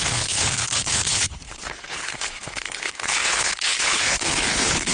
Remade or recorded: remade